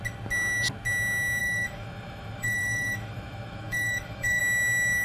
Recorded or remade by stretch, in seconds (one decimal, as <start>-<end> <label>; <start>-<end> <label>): 0.0-1.4 recorded; 1.4-4.4 remade; 4.4-5.0 recorded